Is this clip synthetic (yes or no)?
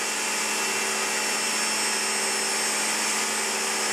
no